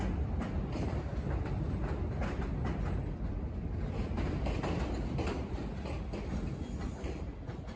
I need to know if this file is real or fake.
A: real